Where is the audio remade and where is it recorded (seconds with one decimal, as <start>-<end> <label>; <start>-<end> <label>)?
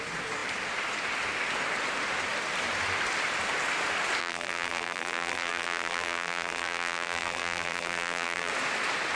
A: 0.0-4.2 recorded; 4.2-8.5 remade; 8.5-9.2 recorded